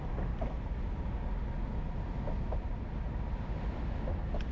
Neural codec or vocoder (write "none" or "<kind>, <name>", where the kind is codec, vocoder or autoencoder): none